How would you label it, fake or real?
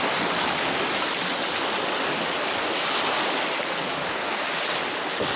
real